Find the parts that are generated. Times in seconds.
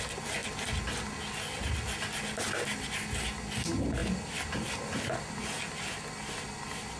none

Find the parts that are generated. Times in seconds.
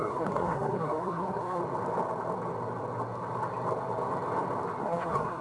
0.0-1.6 (codec, SNAC); 4.8-5.4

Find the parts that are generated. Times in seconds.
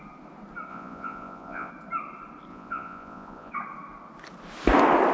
0.7-1.7 (vocoder, Vocos); 2.5-3.5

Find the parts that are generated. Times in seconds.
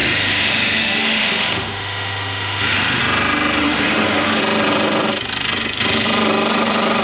0.0-3.0 (autoencoder, DAC-VAE); 3.6-4.4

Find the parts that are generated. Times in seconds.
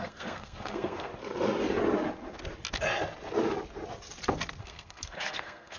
0.0-1.1 (codec, SNAC); 4.6-5.8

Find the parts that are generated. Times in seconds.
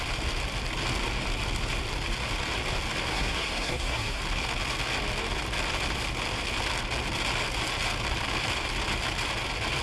3.1-4.2 (codec, SNAC)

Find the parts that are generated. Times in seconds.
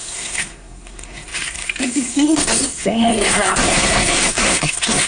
0.0-5.1 (codec, SNAC)